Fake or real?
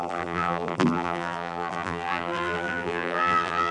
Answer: fake